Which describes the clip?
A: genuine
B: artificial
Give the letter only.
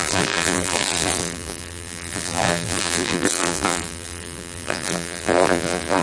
B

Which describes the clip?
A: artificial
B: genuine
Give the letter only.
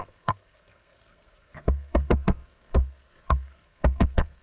A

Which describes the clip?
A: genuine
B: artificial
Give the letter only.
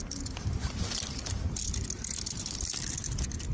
A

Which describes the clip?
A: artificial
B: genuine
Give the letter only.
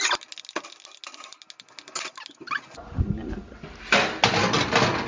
B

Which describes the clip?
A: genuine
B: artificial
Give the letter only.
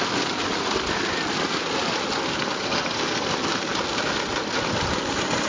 A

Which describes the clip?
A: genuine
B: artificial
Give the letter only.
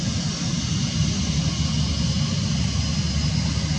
A